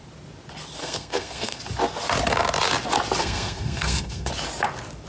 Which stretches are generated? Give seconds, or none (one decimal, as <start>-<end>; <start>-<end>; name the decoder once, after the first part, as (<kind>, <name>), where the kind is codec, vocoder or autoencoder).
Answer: 0.8-1.6 (codec, SNAC); 3.2-4.3